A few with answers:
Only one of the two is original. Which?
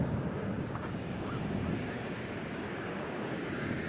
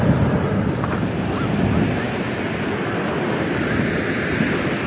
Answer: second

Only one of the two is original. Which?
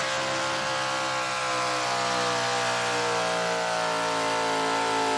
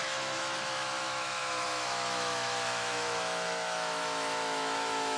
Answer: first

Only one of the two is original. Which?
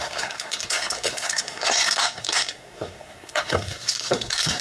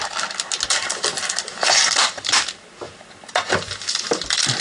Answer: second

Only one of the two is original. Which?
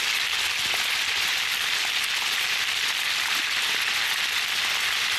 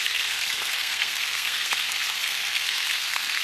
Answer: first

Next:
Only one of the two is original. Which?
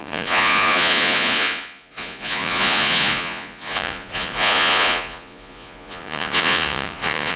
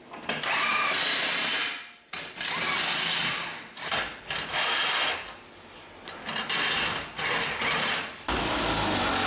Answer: second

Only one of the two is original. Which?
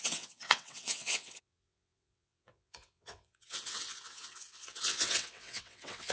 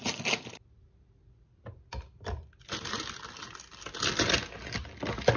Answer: second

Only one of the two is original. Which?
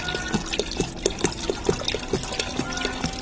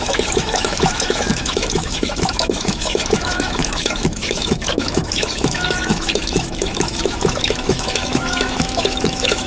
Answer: first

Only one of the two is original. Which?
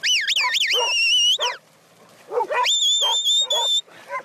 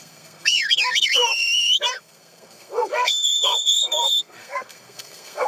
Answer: first